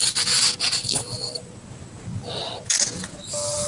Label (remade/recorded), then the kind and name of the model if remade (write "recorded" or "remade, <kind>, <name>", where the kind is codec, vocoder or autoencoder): recorded